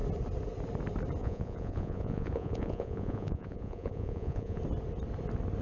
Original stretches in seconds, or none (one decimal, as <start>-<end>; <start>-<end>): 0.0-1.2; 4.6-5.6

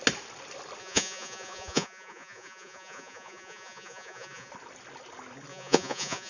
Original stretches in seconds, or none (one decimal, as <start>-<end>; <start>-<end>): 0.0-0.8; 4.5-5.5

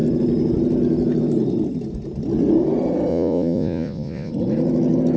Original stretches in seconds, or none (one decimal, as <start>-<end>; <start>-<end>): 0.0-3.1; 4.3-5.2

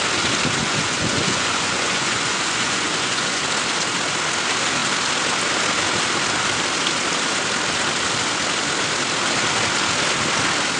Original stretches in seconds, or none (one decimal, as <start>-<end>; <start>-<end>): 0.0-0.6; 3.4-10.8